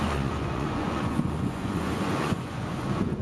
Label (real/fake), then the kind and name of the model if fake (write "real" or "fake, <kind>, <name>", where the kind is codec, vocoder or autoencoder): fake, vocoder, Vocos